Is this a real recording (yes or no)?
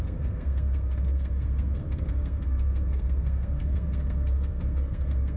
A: no